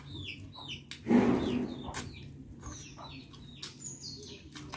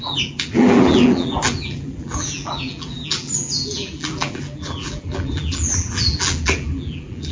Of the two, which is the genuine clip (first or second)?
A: first